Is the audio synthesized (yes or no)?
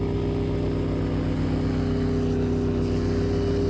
no